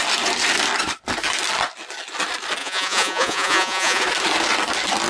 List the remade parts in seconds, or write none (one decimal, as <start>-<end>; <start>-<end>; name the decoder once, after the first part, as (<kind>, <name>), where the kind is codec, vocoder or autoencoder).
2.6-4.0 (vocoder, Vocos)